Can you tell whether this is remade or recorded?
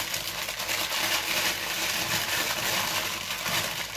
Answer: remade